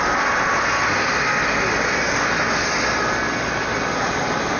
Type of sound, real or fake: real